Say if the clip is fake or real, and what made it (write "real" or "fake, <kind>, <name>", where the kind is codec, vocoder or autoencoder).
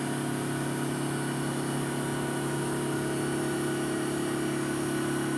real